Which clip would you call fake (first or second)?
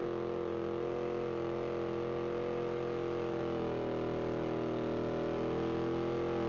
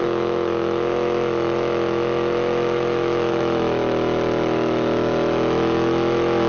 second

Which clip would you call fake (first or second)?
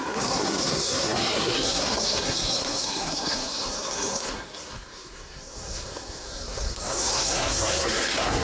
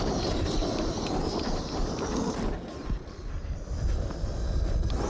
first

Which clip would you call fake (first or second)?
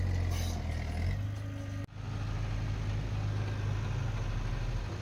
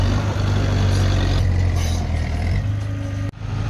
second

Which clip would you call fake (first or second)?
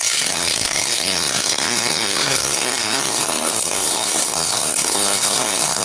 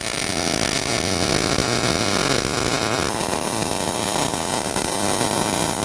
first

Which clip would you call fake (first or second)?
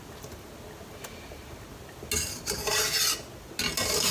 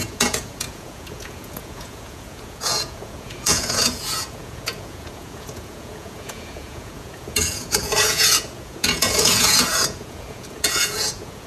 second